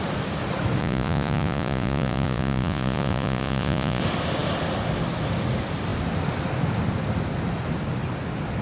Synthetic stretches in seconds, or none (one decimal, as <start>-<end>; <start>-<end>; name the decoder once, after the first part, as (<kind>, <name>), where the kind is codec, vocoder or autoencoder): 0.8-4.0 (vocoder, Vocos)